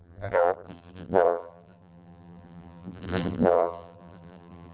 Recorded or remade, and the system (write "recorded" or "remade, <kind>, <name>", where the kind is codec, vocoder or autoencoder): remade, vocoder, BigVGAN v2